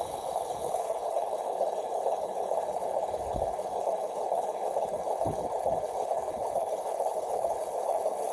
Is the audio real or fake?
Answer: fake